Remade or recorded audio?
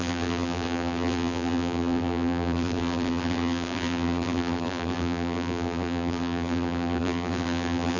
remade